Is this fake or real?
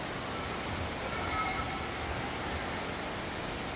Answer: real